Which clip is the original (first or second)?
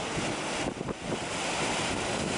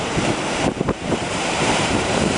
first